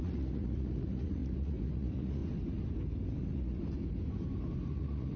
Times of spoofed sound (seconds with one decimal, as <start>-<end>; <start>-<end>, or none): 0.0-2.2; 3.2-3.6; 4.7-5.2